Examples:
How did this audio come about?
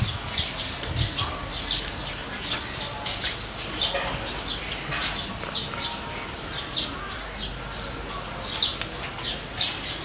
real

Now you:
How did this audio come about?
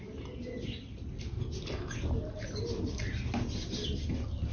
real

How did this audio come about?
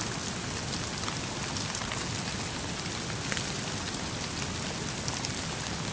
real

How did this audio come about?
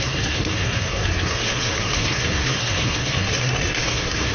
fake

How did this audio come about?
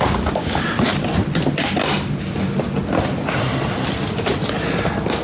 real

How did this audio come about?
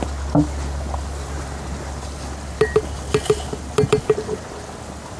real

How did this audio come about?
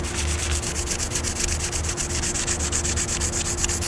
real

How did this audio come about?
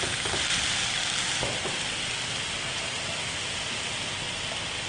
real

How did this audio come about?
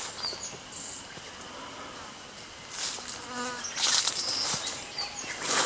real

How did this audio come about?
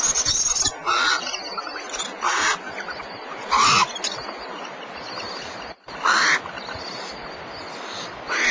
real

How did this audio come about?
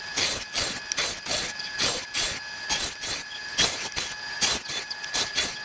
real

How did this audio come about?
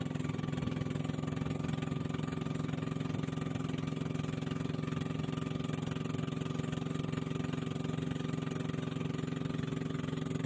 real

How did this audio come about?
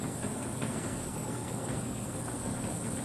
fake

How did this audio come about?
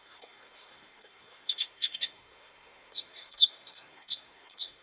fake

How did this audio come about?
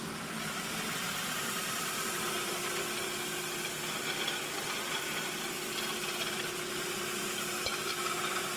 real